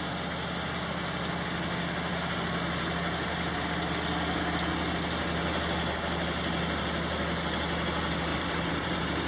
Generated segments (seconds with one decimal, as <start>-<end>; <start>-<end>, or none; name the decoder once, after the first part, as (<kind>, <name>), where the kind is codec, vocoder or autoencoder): 8.3-9.3 (vocoder, BigVGAN v2)